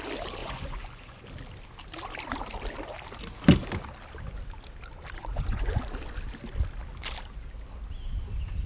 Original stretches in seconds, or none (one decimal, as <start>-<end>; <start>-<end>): 0.0-0.4; 1.2-5.2; 5.8-8.7